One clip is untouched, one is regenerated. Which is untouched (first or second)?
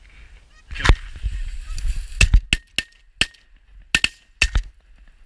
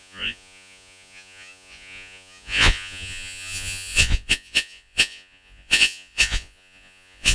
first